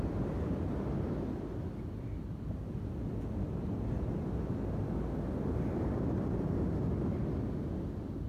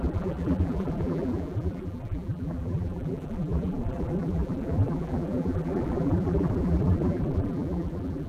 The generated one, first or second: second